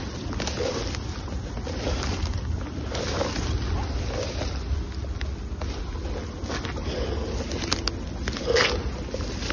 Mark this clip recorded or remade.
recorded